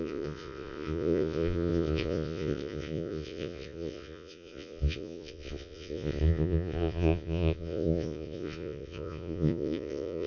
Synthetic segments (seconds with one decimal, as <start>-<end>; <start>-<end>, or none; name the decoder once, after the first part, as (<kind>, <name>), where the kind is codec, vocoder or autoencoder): 0.0-10.3 (vocoder, Vocos)